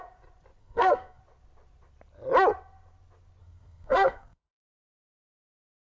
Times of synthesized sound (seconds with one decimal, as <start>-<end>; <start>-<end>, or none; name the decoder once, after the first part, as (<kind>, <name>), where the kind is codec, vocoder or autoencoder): 0.6-1.2 (codec, SNAC); 3.4-5.0